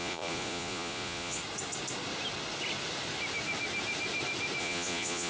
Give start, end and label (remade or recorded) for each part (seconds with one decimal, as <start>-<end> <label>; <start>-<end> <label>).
0.0-1.4 remade; 1.4-4.6 recorded; 4.6-5.3 remade